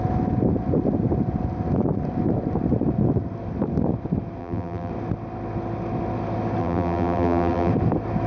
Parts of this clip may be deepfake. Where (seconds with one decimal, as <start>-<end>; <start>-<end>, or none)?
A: 4.4-4.9; 6.6-7.7